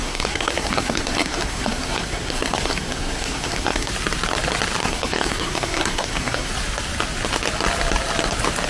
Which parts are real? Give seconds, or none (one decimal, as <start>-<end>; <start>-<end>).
3.9-4.8; 6.5-8.7